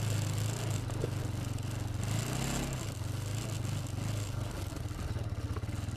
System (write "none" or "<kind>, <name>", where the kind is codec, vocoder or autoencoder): none